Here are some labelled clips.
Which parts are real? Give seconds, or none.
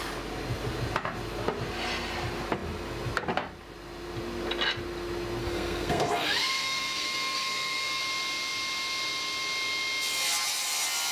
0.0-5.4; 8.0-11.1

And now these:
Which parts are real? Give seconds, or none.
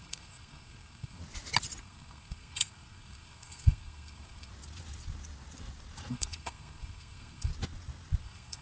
1.2-1.8; 4.5-6.1; 7.5-8.2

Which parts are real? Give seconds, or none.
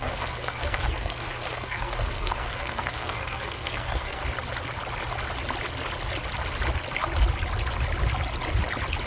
4.2-9.1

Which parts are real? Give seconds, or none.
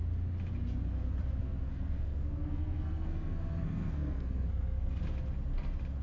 0.0-1.4; 5.0-6.0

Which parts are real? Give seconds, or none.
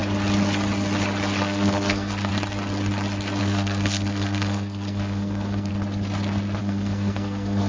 0.0-1.4; 2.3-3.4; 5.7-6.6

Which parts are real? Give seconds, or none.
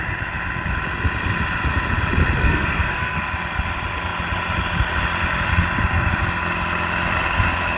0.0-2.4; 3.2-7.8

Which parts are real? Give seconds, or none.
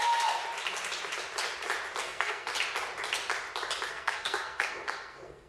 0.4-2.0; 2.5-3.9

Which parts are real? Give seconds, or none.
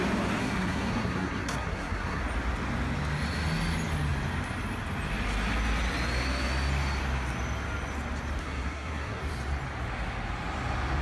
0.0-0.4; 2.2-8.4; 9.2-11.0